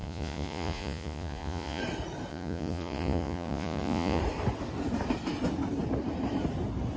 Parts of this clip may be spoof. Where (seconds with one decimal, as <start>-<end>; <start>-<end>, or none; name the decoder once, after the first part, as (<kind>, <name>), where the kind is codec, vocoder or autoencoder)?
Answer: 0.0-1.8 (vocoder, Vocos); 2.3-4.2